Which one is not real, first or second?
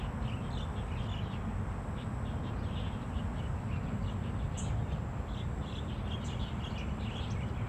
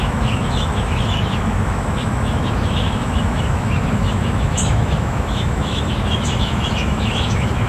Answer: second